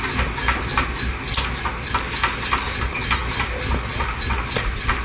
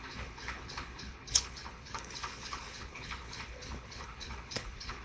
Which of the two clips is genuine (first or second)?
first